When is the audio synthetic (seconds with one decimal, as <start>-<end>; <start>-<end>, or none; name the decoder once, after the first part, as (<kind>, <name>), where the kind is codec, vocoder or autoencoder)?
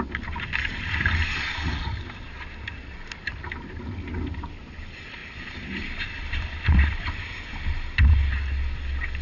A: none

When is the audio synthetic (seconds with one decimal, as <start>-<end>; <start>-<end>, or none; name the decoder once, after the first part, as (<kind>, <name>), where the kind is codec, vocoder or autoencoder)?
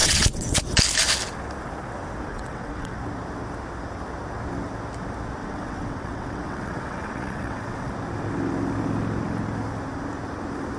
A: 0.0-0.6 (vocoder, WaveNeXt); 2.3-3.0; 5.4-7.9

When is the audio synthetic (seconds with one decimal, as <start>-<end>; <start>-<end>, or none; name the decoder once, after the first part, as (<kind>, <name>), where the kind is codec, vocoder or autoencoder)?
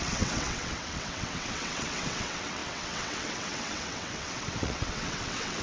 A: 0.0-5.6 (vocoder, WaveNeXt)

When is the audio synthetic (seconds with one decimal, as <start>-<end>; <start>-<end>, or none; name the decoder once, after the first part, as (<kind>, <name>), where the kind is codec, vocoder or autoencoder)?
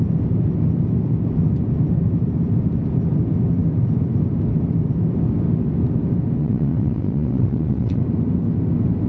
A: 6.4-8.0 (vocoder, WaveNeXt)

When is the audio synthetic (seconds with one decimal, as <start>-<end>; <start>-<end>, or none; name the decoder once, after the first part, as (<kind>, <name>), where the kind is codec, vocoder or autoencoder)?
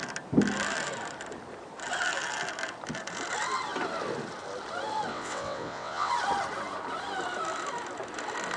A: 5.1-6.1 (vocoder, WaveNeXt)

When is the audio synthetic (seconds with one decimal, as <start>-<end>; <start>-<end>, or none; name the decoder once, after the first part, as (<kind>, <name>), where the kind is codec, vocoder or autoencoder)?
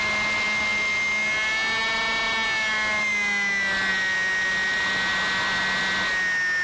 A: none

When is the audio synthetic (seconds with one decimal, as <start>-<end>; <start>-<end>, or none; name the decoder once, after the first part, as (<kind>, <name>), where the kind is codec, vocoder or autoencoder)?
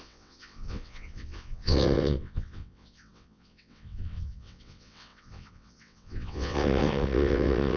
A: 0.0-7.8 (vocoder, WaveNeXt)